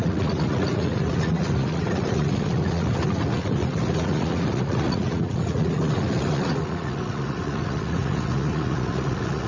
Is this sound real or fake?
fake